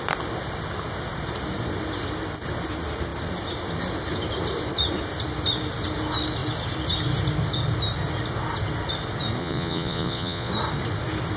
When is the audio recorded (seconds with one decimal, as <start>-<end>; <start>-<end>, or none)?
0.0-9.4; 10.5-11.4